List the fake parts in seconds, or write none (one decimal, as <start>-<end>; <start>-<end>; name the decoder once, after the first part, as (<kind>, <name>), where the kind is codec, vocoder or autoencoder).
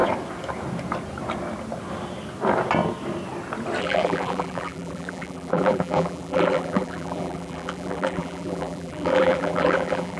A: 3.8-10.2 (vocoder, BigVGAN v2)